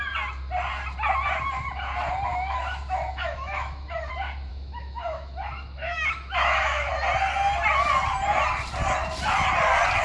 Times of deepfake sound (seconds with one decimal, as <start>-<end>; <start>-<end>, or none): 2.3-4.1; 4.5-6.9